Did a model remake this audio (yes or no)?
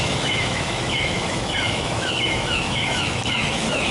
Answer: yes